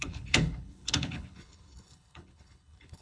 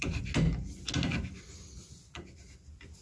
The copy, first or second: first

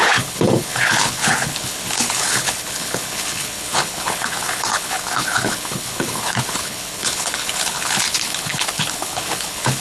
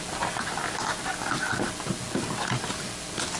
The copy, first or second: first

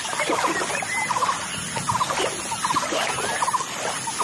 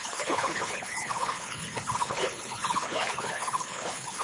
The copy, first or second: second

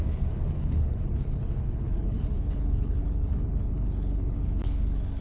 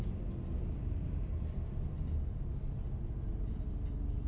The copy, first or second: first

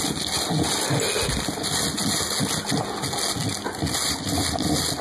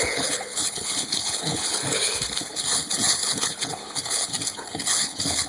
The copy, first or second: second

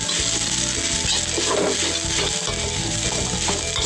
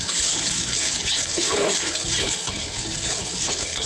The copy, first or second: second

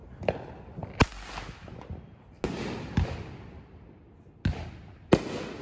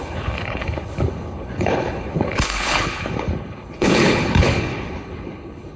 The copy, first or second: second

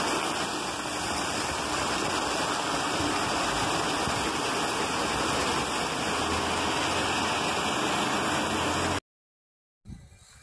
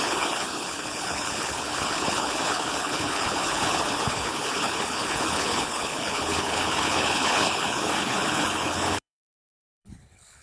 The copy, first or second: second